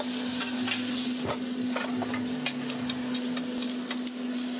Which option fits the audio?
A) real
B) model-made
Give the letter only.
A